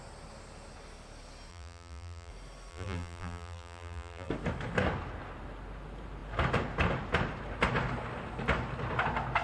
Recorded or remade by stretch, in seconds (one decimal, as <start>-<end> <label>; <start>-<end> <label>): 0.0-1.5 recorded; 1.5-2.3 remade; 2.3-2.7 recorded; 2.7-4.3 remade; 4.3-9.4 recorded